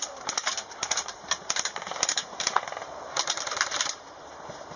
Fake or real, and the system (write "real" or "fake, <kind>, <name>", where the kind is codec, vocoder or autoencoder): fake, vocoder, BigVGAN v2